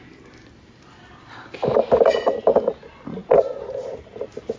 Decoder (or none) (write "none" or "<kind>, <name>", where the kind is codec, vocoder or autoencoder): none